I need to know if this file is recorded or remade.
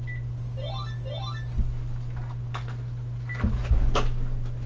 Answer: recorded